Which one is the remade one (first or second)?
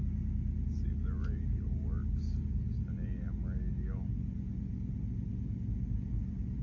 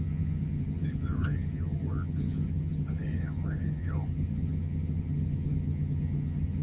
second